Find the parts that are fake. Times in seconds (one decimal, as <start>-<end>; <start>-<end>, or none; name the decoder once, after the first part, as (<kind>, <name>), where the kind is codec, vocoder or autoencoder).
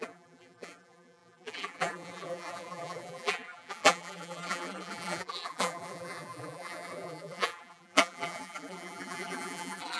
0.0-10.0 (vocoder, BigVGAN v2)